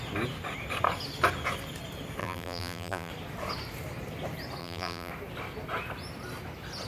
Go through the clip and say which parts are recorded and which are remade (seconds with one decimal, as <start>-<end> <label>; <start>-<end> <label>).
0.0-2.2 recorded; 2.2-3.1 remade; 3.1-4.6 recorded; 4.6-5.1 remade; 5.1-6.9 recorded